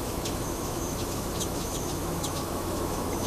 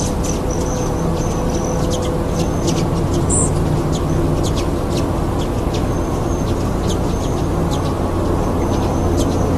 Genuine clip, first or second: second